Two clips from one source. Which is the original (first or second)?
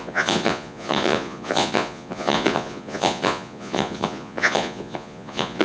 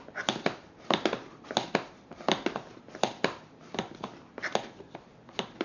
second